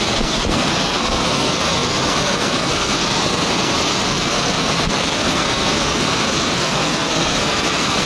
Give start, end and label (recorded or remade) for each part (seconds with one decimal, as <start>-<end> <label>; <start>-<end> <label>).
0.0-8.1 remade